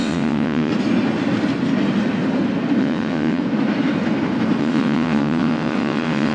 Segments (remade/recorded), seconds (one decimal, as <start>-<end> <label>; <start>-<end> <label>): 0.0-0.7 remade; 0.7-2.8 recorded; 2.8-3.4 remade; 3.4-4.6 recorded; 4.6-6.3 remade